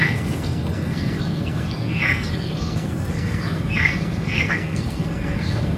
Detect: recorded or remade remade